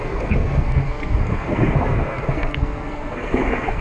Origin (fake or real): fake